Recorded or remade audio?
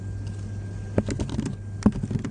recorded